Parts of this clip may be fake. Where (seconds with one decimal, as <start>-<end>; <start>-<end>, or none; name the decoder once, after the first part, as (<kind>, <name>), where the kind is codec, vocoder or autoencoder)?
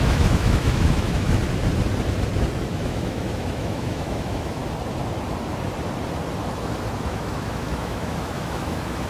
0.0-1.4 (autoencoder, DAC-VAE); 2.7-4.6; 7.0-9.1